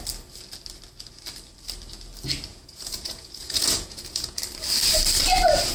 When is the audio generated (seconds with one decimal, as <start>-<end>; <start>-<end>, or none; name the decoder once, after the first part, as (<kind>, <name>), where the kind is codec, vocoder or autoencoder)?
2.5-4.4 (vocoder, Vocos)